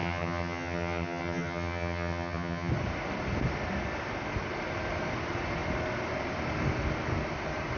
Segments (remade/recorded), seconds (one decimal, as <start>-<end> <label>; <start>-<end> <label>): 0.0-2.7 remade; 2.7-7.8 recorded